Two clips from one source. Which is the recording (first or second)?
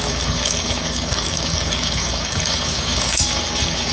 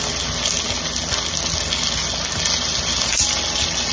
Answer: second